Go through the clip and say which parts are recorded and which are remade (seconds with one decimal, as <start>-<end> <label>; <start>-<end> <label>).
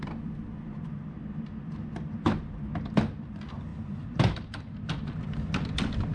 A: 0.0-3.7 recorded; 3.7-4.8 remade; 4.8-6.1 recorded